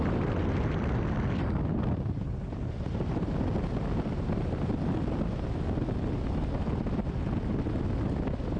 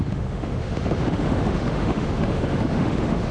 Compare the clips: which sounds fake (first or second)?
second